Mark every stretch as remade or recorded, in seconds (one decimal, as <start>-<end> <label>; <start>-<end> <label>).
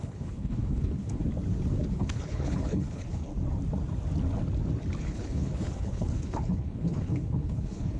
0.0-1.2 remade; 1.2-1.9 recorded; 1.9-3.3 remade; 3.3-5.0 recorded; 5.0-8.0 remade